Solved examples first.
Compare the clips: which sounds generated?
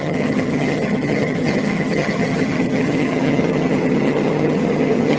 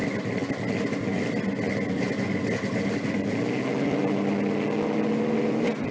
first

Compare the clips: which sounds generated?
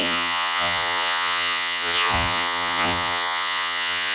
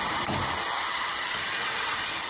first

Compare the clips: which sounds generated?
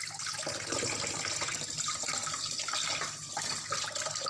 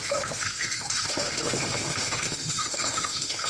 second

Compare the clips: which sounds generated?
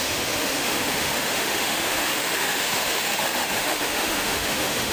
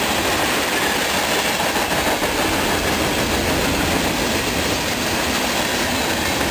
first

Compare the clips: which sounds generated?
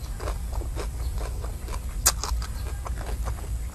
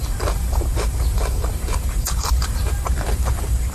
second